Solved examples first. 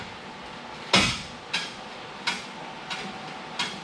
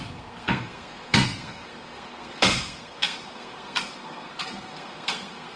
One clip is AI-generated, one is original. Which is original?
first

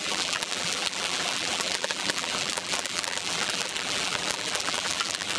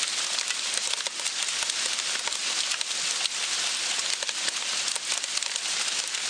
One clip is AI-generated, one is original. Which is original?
second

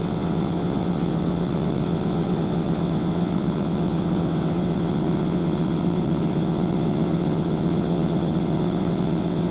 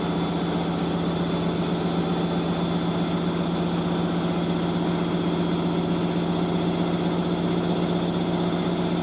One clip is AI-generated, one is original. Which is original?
second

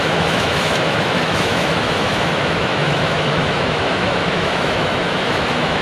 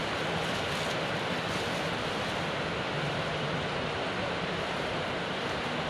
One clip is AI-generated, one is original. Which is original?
second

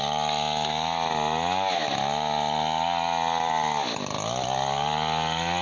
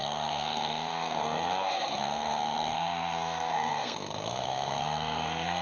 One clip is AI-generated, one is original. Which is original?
first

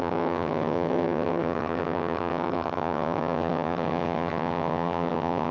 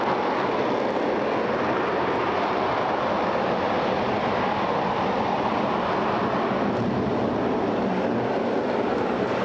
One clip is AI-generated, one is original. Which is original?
second